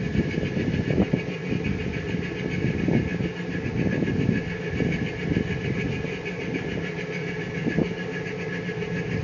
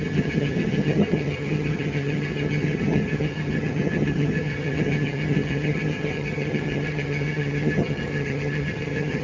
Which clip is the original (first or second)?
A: first